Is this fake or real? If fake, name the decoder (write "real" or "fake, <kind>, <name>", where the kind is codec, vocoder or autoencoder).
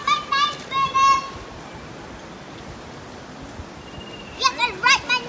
real